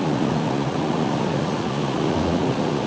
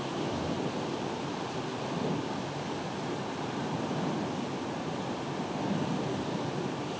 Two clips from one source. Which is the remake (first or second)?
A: first